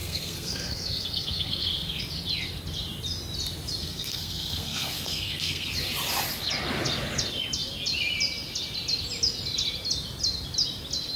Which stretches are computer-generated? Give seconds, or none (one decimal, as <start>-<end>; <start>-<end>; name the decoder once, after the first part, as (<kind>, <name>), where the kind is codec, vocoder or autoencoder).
0.0-2.0 (codec, SNAC); 3.8-5.7